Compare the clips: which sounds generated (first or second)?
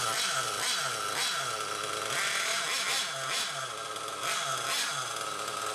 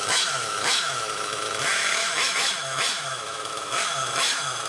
second